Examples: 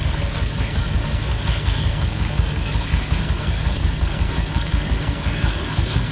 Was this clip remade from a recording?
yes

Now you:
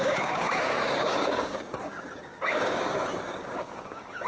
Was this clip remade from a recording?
yes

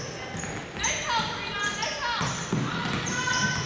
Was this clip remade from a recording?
no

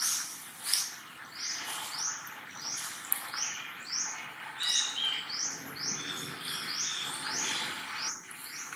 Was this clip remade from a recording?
no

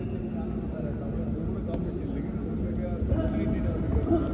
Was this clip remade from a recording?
no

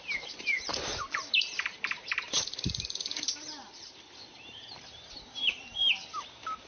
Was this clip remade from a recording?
yes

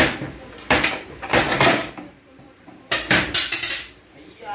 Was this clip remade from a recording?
yes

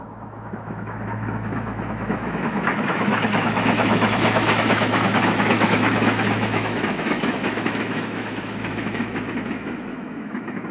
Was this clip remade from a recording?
yes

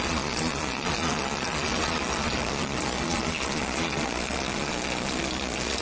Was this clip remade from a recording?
yes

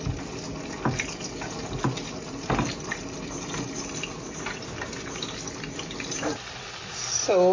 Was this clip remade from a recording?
no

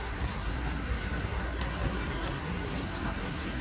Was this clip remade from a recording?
yes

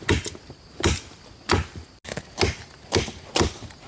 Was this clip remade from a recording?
no